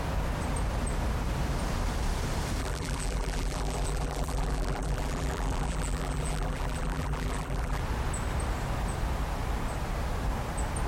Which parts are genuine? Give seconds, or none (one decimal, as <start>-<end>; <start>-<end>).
0.0-2.6; 7.8-10.9